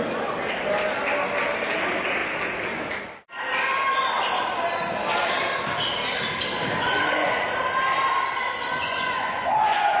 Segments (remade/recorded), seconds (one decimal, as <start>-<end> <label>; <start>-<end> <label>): 0.0-6.8 recorded; 6.8-7.4 remade; 7.4-8.8 recorded; 8.8-10.0 remade